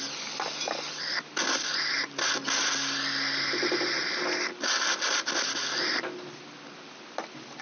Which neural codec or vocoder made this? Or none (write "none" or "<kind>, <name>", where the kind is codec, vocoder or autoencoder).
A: none